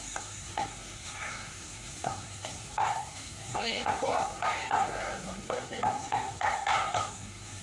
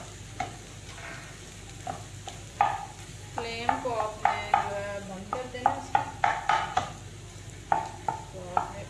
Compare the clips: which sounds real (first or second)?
second